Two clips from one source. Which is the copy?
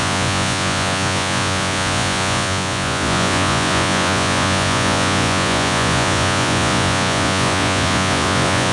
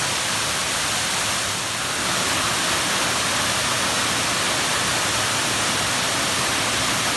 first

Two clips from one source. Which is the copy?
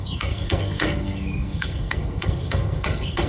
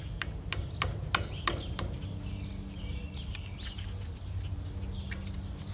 first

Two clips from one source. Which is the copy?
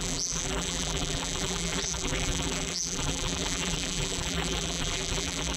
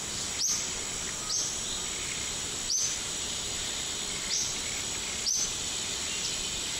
first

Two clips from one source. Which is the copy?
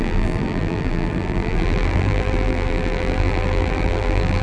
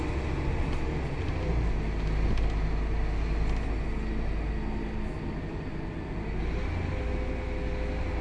first